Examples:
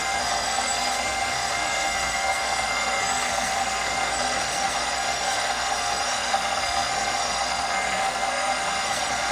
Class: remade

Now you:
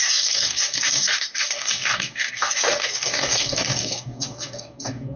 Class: remade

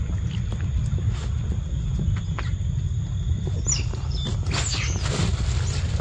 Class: recorded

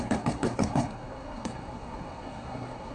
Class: remade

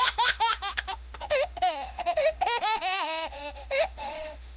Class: remade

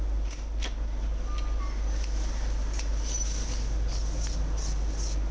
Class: recorded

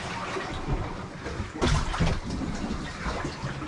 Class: recorded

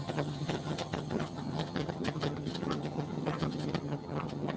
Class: remade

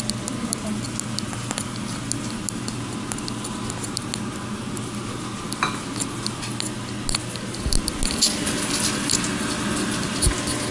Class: recorded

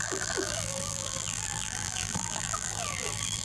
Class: remade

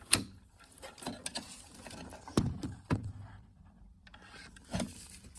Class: remade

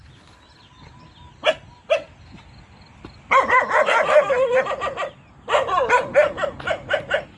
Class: recorded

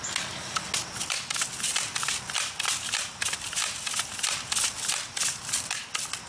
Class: recorded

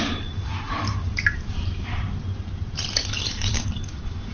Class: remade